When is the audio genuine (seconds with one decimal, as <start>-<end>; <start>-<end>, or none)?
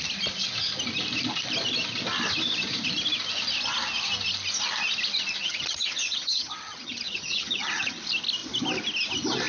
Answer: 0.0-5.4; 8.0-9.5